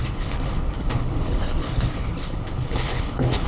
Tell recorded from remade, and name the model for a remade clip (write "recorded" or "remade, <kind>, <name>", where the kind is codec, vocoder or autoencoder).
remade, codec, HILCodec